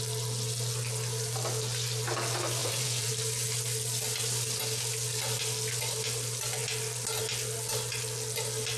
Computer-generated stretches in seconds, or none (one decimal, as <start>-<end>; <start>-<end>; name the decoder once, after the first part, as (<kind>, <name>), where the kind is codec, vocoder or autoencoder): 2.6-3.1 (vocoder, Vocos)